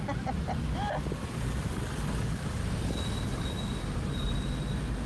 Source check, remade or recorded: recorded